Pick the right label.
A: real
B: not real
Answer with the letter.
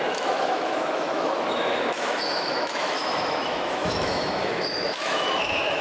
B